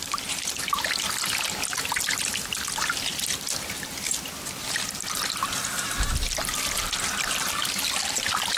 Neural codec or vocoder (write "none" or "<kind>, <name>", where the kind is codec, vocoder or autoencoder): none